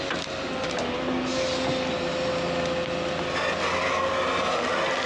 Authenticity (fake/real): real